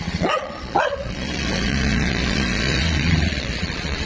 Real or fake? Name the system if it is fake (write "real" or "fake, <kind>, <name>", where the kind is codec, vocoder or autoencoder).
fake, vocoder, Vocos